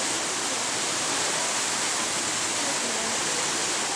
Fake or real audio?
real